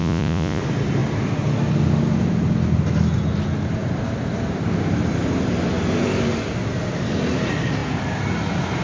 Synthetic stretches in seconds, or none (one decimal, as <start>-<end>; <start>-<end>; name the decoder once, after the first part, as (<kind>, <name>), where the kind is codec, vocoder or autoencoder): 0.0-0.6 (vocoder, Vocos)